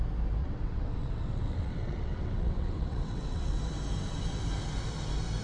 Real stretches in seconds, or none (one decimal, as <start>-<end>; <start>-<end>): 0.0-0.4; 3.6-5.4